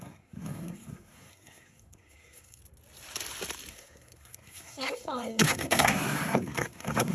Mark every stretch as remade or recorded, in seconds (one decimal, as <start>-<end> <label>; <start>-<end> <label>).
0.0-2.6 remade; 2.6-3.7 recorded; 3.7-7.1 remade